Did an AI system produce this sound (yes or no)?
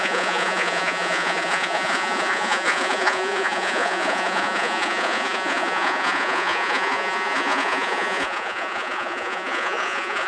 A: yes